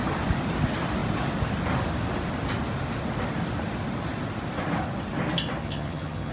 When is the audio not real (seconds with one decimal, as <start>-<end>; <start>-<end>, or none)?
5.6-6.3